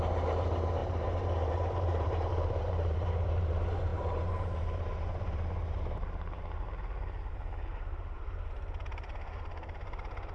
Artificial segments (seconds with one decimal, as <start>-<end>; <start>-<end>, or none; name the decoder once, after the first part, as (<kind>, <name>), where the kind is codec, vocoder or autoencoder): 0.0-10.3 (vocoder, BigVGAN v2)